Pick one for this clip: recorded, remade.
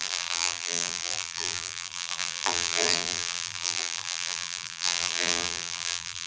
remade